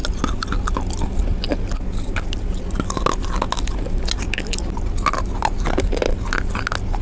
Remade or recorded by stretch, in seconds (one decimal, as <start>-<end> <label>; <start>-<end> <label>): 0.0-7.0 recorded